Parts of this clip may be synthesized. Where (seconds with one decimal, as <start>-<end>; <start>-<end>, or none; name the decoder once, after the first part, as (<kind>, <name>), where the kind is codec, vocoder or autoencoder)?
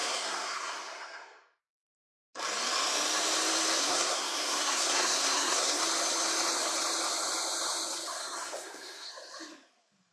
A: 0.0-1.6 (codec, SNAC); 3.8-5.8; 8.2-9.1